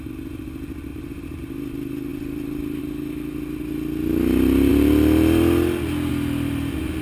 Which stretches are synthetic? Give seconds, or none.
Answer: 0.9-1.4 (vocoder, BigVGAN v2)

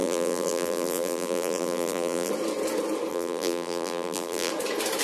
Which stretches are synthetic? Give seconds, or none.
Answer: 0.0-2.3 (vocoder, BigVGAN v2); 3.1-4.5

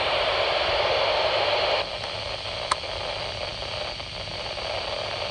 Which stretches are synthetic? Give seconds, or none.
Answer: none

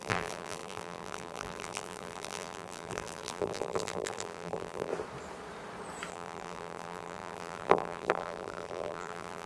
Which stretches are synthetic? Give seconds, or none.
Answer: 0.0-4.9 (vocoder, BigVGAN v2); 6.1-9.5

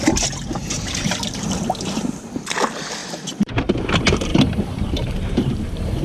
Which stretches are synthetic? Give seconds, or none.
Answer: 0.6-1.5 (vocoder, BigVGAN v2); 3.0-3.8; 4.3-6.0

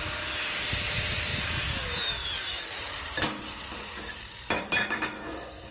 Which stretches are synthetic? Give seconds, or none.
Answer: 2.2-5.7 (vocoder, BigVGAN v2)

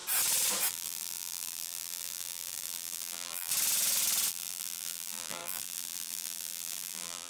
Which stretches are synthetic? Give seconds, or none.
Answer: 0.7-3.5 (vocoder, BigVGAN v2); 4.3-7.3